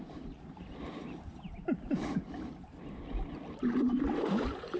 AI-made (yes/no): no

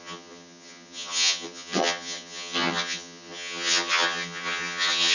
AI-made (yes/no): yes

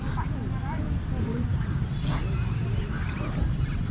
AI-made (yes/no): no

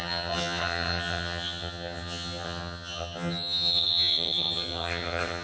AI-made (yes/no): yes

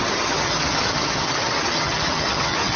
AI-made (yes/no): yes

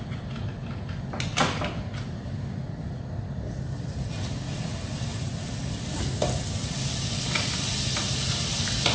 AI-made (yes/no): no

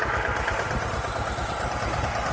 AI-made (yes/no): no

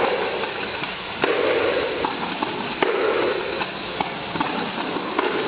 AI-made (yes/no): no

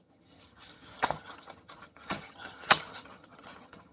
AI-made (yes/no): yes